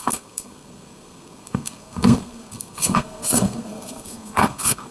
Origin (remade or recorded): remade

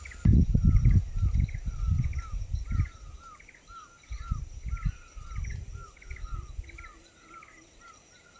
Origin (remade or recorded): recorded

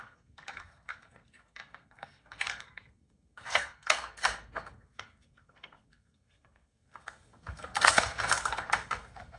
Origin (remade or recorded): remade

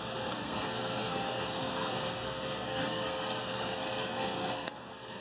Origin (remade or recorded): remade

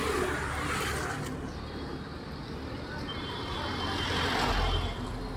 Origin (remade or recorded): recorded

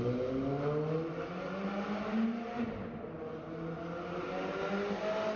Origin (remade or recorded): recorded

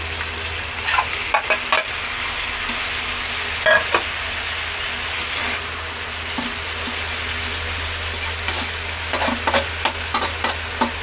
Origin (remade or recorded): recorded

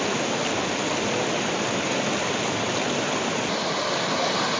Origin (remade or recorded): recorded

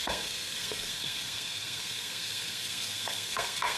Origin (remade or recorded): remade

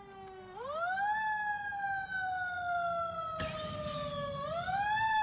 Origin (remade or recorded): recorded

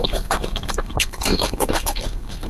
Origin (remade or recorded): remade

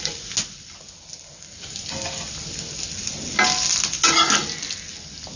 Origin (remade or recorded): recorded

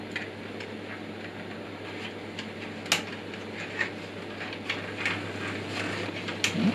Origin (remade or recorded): recorded